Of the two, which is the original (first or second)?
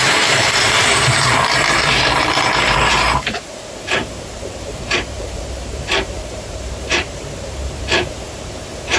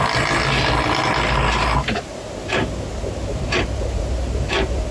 second